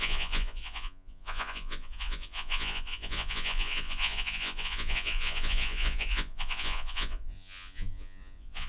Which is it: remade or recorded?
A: remade